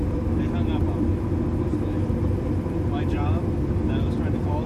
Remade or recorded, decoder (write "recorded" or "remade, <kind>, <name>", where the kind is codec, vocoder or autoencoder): recorded